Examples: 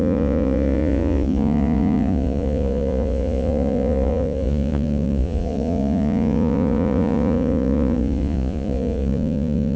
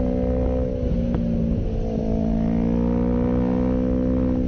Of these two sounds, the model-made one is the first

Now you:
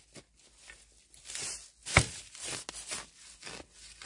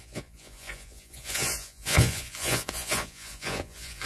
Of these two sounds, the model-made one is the second